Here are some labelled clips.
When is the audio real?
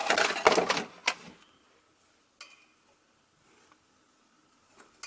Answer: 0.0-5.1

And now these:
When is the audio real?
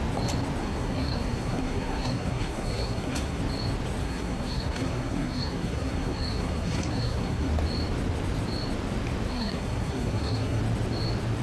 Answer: 0.0-0.6; 3.4-4.0; 7.5-9.3; 10.6-11.4